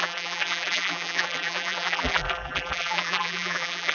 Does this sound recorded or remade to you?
remade